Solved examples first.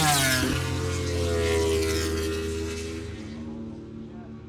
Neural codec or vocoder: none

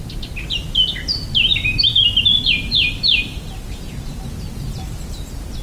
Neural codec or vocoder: none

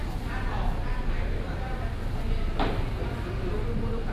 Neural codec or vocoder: none